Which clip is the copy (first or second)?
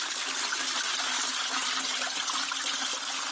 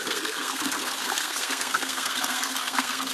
second